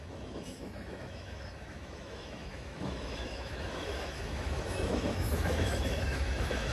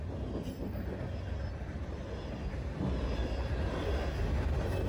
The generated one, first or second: first